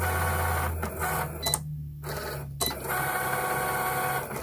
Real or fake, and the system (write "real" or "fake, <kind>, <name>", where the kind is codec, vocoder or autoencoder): real